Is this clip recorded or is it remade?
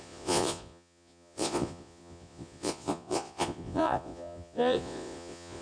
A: remade